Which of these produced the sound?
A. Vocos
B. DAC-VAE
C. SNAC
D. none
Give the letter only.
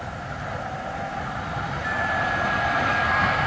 D